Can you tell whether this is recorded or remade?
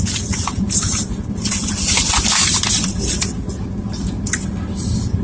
recorded